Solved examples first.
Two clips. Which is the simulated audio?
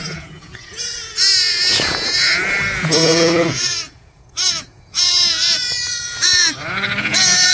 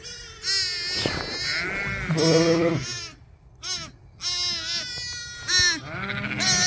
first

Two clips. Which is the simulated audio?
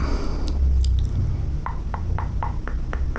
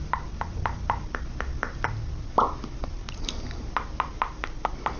second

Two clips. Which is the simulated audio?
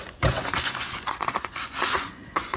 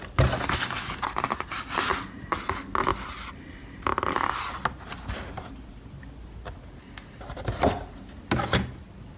first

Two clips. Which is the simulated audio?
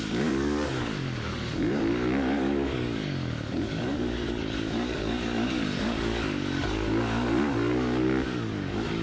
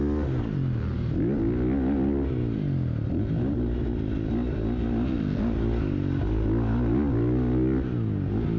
first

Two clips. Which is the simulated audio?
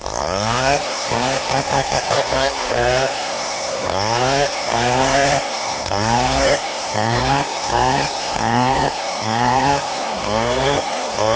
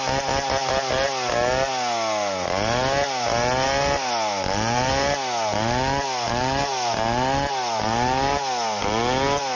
first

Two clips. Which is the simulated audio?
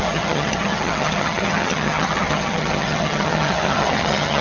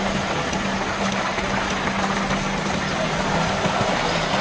first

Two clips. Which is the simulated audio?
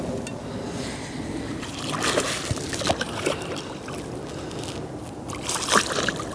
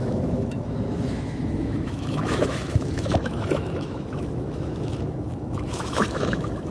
second